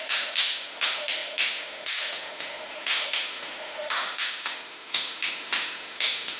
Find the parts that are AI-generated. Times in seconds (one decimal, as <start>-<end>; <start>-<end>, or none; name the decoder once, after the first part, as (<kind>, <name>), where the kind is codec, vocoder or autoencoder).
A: 0.0-6.4 (autoencoder, DAC-VAE)